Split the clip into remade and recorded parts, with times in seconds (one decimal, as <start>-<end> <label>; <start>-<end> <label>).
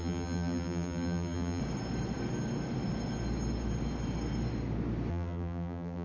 0.0-1.6 remade; 1.6-5.1 recorded; 5.1-6.0 remade